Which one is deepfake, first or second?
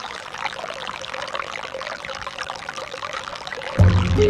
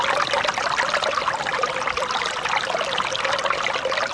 first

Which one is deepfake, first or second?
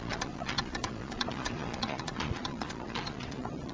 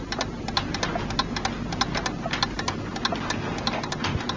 first